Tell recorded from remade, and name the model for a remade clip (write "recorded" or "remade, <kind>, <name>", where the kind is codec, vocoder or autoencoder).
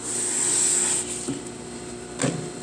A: recorded